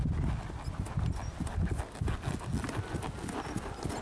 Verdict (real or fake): real